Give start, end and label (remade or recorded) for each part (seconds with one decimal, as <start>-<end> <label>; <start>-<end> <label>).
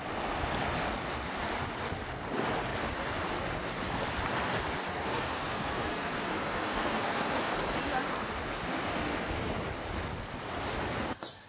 0.0-4.9 recorded; 4.9-7.5 remade; 7.5-8.9 recorded; 8.9-9.5 remade; 9.5-11.5 recorded